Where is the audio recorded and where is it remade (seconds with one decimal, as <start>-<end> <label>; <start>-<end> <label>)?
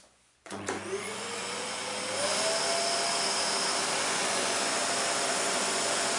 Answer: 0.0-1.8 remade; 1.8-4.0 recorded; 4.0-4.8 remade; 4.8-5.3 recorded; 5.3-6.2 remade